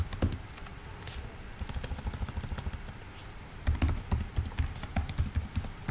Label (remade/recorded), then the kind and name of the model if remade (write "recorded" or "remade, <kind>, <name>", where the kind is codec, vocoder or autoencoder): recorded